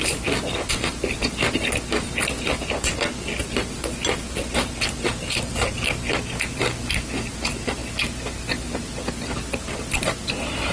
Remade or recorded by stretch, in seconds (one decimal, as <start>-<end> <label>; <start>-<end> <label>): 0.0-10.7 recorded